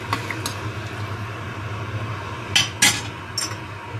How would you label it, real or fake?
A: real